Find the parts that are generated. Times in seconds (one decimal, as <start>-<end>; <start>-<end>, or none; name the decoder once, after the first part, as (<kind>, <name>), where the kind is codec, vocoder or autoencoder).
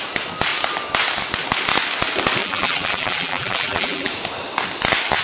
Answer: 2.4-4.1 (vocoder, BigVGAN v2)